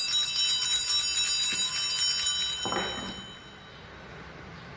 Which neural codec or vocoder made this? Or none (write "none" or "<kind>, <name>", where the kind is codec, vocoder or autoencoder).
none